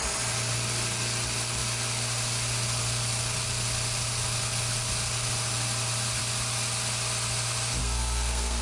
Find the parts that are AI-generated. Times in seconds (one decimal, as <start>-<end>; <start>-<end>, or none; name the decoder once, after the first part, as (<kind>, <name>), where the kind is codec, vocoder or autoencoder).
7.8-8.6 (codec, SNAC)